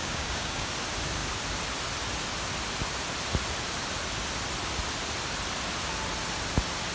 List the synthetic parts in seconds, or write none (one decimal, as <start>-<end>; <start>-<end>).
0.0-0.7